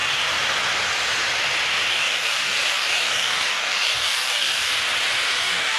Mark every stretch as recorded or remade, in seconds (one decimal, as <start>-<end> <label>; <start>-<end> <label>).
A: 0.0-1.9 recorded; 1.9-4.7 remade; 4.7-5.3 recorded; 5.3-5.8 remade